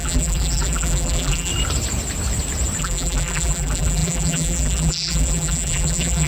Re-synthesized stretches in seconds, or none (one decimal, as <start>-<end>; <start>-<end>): 0.0-1.5; 2.8-6.3